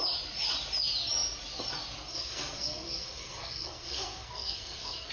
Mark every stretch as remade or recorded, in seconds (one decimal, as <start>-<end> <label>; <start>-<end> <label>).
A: 0.0-2.1 recorded; 2.1-5.1 remade